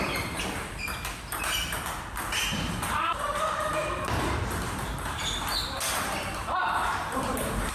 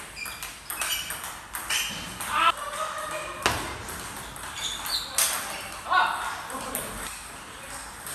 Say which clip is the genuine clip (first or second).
second